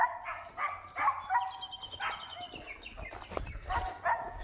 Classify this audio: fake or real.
real